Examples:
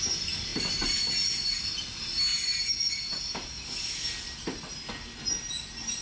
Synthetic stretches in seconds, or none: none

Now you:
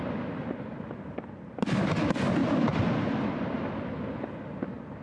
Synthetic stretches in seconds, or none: none

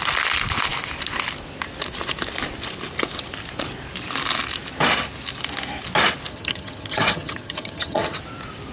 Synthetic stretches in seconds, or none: 6.3-8.2

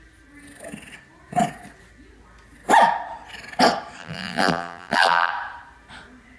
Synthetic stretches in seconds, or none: 4.0-5.3

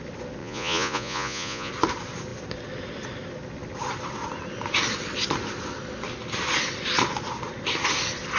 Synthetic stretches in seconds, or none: 0.4-1.7

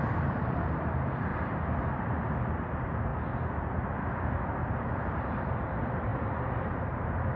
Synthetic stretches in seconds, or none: 0.0-1.3; 1.9-3.1; 4.7-7.4

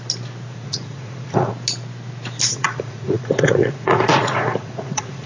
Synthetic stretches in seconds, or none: 0.5-1.5; 2.5-5.3